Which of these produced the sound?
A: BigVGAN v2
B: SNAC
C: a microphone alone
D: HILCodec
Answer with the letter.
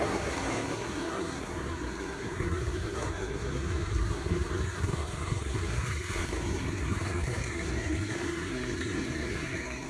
B